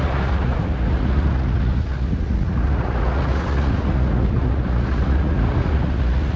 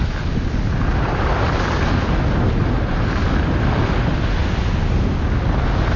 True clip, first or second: second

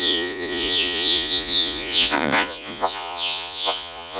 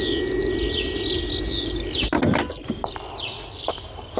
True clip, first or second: second